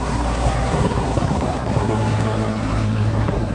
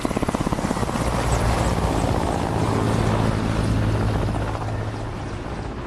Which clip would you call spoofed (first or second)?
first